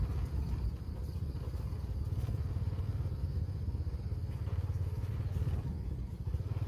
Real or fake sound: real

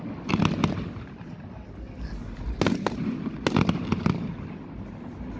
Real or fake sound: real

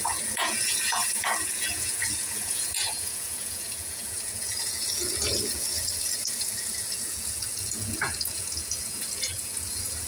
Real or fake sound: fake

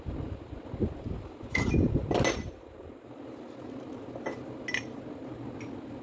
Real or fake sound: real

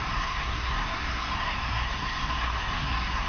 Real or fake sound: fake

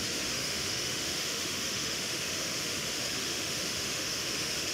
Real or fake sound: fake